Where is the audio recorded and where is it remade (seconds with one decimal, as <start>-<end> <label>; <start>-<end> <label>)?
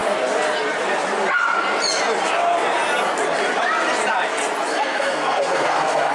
0.0-4.7 recorded; 4.7-6.1 remade